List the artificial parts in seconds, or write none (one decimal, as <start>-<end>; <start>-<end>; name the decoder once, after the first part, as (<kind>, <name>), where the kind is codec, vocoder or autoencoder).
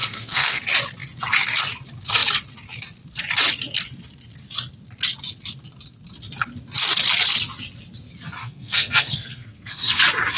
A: 0.0-0.6 (codec, SNAC); 8.4-10.0